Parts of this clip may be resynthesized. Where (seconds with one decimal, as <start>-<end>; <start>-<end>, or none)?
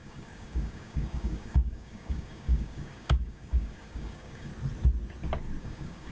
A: 0.0-4.5; 5.6-6.1